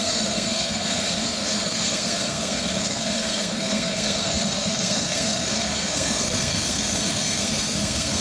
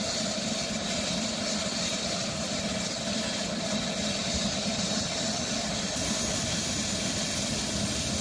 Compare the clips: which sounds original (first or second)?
second